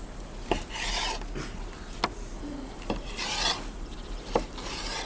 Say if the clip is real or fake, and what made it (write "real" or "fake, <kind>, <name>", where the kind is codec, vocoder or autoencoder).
real